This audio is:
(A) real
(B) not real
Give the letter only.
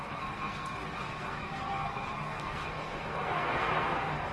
B